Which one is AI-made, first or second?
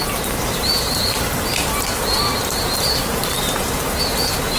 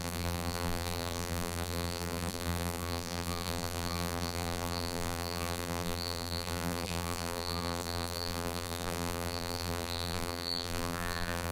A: second